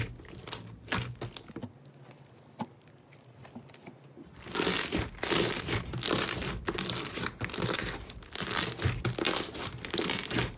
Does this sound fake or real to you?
real